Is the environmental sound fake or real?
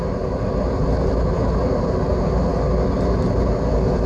real